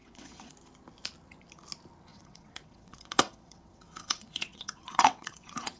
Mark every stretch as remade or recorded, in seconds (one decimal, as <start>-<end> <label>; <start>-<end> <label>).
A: 0.0-0.5 remade; 0.5-2.1 recorded; 2.1-5.8 remade